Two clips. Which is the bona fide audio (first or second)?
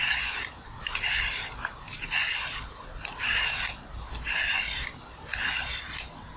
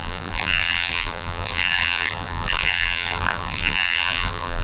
first